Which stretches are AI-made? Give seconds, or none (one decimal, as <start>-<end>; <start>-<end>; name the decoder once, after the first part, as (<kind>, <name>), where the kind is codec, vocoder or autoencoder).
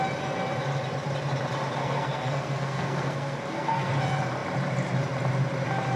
1.8-3.9 (codec, SNAC)